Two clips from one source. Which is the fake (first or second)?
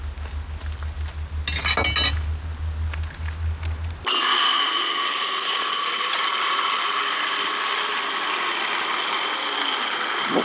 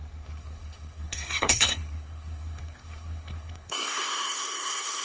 second